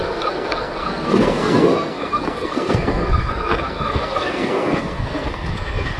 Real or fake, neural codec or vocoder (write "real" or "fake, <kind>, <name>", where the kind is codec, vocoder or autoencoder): fake, codec, SNAC